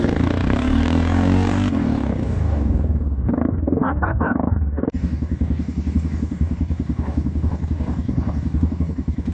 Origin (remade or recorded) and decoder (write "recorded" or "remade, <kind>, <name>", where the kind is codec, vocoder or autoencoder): remade, codec, DAC